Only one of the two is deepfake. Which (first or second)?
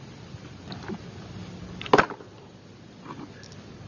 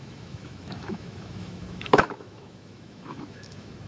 second